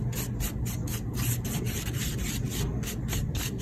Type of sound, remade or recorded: recorded